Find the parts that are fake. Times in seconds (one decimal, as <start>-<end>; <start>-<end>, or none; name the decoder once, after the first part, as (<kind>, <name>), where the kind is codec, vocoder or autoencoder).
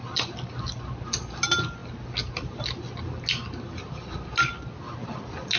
none